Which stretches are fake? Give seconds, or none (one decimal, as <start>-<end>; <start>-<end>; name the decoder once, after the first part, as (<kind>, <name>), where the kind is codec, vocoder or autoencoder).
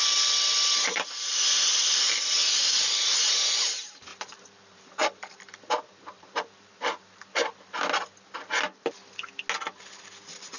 4.1-7.2 (vocoder, BigVGAN v2)